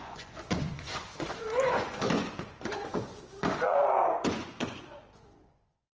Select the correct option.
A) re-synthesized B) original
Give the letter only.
A